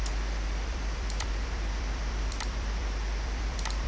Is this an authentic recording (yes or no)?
no